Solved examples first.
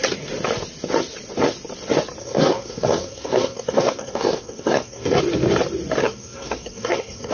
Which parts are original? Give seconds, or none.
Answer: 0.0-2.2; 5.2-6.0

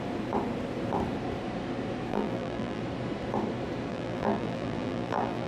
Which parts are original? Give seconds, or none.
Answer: 0.0-2.1; 2.8-3.9

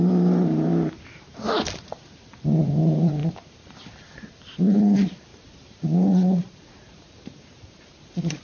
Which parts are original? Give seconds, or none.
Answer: 0.7-2.8